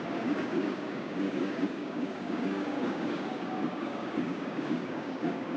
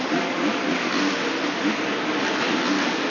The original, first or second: second